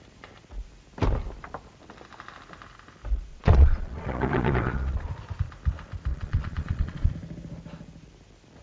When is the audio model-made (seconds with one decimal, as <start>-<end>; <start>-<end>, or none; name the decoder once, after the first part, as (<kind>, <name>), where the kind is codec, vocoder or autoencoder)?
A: 3.3-5.1 (vocoder, Vocos); 6.1-7.1